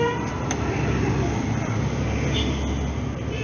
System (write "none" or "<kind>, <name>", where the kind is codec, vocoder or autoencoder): none